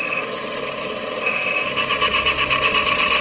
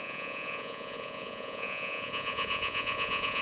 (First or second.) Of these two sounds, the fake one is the second